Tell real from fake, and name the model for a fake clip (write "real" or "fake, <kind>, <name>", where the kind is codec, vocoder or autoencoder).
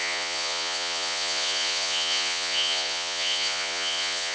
fake, vocoder, Vocos